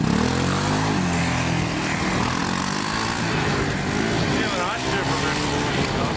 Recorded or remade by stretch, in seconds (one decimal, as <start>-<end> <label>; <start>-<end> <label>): 0.0-6.2 recorded